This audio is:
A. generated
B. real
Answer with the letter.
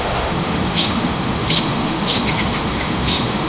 A